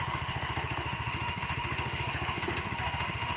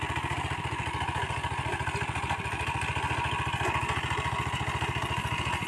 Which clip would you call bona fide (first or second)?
second